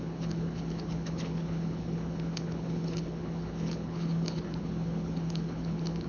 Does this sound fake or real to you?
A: fake